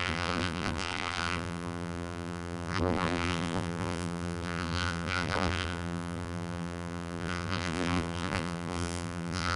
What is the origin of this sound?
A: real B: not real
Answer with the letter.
B